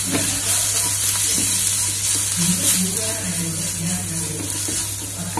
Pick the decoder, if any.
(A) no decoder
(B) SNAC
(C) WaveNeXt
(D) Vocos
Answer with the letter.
A